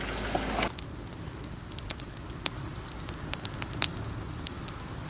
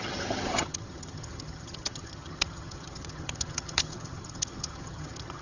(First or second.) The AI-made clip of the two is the second